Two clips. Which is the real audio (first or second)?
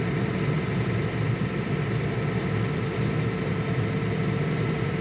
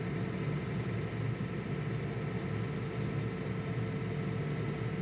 second